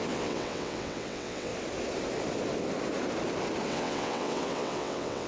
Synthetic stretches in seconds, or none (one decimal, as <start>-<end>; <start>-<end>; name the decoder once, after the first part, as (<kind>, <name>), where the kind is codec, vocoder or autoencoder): 0.0-1.5 (vocoder, WaveNeXt); 3.7-5.3